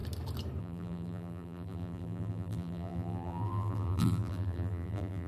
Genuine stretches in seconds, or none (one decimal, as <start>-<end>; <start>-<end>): 0.0-0.6